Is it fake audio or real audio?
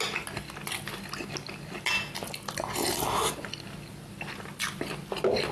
real